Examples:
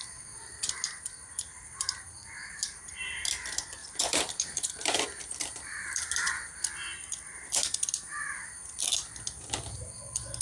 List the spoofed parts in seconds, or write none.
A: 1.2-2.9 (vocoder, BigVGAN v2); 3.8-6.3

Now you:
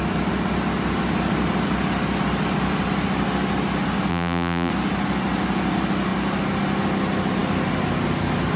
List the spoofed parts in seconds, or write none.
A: 4.1-4.7 (vocoder, BigVGAN v2)